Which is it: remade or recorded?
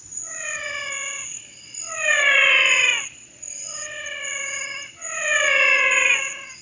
remade